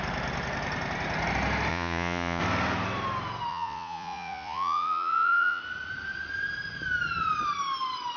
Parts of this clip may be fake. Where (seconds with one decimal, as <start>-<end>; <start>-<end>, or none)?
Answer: 1.7-2.4; 3.5-5.6